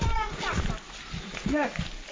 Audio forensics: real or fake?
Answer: real